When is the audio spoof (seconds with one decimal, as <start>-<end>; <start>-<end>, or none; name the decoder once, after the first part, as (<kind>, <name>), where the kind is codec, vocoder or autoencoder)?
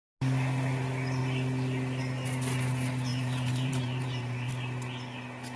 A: 3.1-4.5 (vocoder, BigVGAN v2)